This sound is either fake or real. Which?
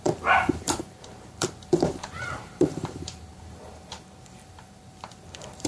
fake